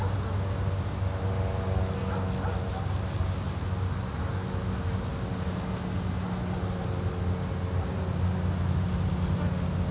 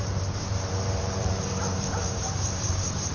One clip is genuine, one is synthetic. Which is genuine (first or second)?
first